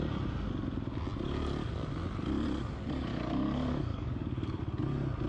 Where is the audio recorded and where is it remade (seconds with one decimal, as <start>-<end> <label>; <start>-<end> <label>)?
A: 0.0-3.1 recorded; 3.1-4.6 remade; 4.6-5.3 recorded